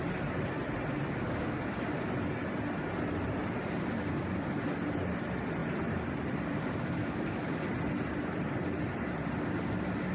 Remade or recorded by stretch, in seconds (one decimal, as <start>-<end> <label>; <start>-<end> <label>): 0.0-5.6 recorded; 5.6-7.8 remade; 7.8-10.1 recorded